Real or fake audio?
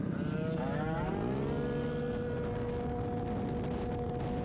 real